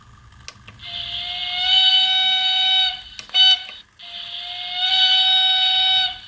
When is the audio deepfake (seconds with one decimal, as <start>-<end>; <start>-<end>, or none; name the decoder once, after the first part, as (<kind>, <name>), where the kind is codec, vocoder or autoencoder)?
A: none